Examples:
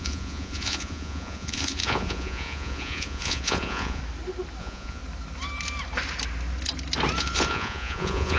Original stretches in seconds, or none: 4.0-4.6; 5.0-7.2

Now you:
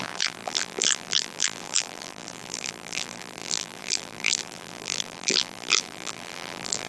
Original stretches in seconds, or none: none

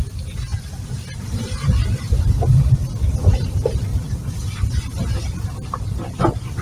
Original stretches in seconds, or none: 0.0-6.6

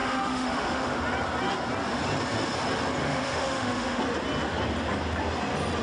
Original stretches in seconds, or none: 1.0-3.0; 4.0-5.8

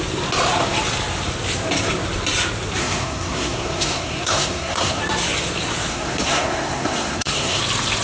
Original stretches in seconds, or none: 0.0-2.8; 5.0-5.9; 7.6-8.0

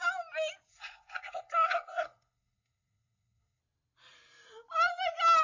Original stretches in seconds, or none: 0.0-0.7; 3.6-5.4